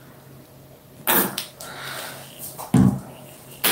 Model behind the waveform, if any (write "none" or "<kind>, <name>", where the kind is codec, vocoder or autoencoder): none